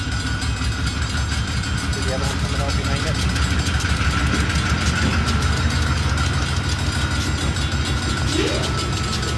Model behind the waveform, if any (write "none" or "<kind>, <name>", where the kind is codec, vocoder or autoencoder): none